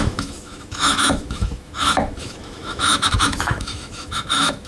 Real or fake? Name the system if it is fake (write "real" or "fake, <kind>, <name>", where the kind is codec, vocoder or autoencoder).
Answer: fake, autoencoder, DAC-VAE